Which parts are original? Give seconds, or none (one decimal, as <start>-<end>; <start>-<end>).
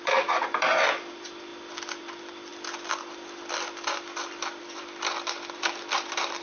1.5-2.0; 2.5-4.6